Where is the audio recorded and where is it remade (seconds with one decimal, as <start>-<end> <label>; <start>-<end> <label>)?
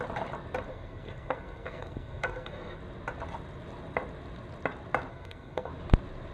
0.0-0.7 recorded; 0.7-2.8 remade; 2.8-5.1 recorded; 5.1-5.7 remade; 5.7-6.3 recorded